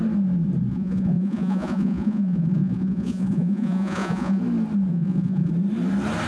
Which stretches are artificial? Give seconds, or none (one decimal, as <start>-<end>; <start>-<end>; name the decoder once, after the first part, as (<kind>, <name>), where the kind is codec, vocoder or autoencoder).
0.7-4.4 (vocoder, Vocos); 4.9-5.5